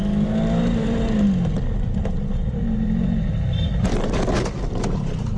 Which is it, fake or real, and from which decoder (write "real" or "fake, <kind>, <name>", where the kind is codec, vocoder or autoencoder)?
real